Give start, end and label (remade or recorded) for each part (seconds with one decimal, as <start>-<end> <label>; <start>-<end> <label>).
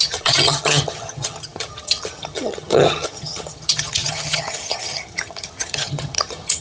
0.0-6.6 remade